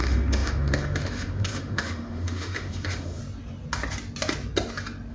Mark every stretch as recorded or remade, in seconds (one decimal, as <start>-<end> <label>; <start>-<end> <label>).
0.0-3.2 remade; 3.2-5.1 recorded